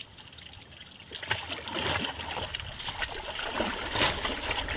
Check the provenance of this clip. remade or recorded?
recorded